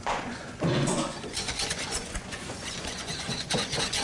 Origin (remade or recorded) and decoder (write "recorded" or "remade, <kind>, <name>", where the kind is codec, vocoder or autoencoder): remade, vocoder, Vocos